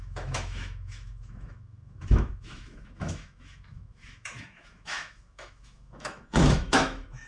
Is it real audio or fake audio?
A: fake